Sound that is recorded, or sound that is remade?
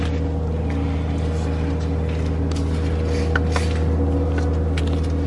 recorded